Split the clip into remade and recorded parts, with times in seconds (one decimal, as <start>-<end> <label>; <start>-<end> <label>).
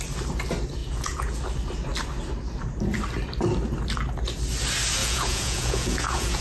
0.0-0.8 recorded; 0.8-1.4 remade; 1.4-5.0 recorded; 5.0-6.4 remade